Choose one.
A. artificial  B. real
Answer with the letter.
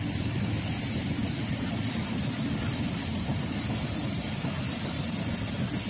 A